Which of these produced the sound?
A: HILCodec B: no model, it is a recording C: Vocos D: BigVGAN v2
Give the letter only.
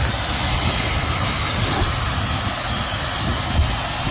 B